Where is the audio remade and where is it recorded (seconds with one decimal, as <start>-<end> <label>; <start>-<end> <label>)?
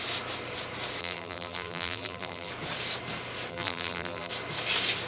0.0-1.0 recorded; 1.0-2.5 remade; 2.5-3.5 recorded; 3.5-4.3 remade; 4.3-5.1 recorded